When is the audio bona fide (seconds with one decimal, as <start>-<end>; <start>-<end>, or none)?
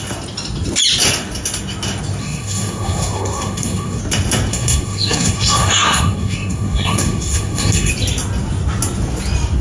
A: 0.0-2.2; 4.0-4.5; 7.9-9.6